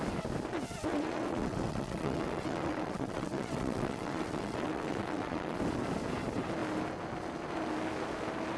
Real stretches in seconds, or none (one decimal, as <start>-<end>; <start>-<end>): 0.0-0.9; 5.6-8.6